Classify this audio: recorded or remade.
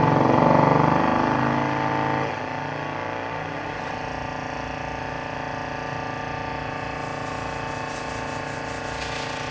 recorded